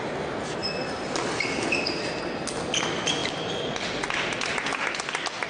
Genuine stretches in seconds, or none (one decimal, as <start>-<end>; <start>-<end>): 0.0-5.5